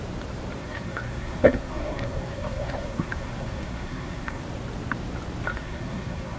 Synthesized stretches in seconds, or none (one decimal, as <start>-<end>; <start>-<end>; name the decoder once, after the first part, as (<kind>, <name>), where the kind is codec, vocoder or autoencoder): 0.6-4.4 (codec, SNAC); 5.5-6.4